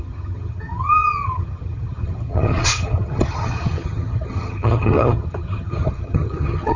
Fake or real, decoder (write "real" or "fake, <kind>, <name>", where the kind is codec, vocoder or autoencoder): fake, vocoder, HiFi-GAN